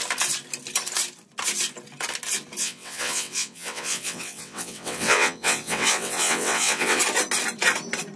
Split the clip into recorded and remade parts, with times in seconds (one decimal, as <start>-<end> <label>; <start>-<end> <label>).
0.0-2.6 recorded; 2.6-7.0 remade; 7.0-8.2 recorded